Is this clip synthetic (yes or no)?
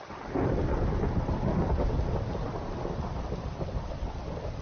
no